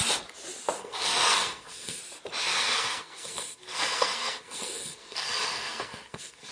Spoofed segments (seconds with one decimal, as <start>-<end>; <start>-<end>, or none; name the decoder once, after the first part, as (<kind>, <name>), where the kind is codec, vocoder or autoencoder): 0.8-2.0 (codec, SNAC); 2.4-6.5